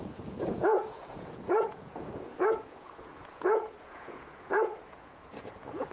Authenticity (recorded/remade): remade